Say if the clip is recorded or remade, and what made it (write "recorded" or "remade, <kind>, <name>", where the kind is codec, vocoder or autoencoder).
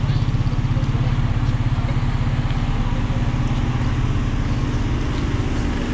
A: recorded